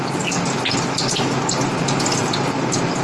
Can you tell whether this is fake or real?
real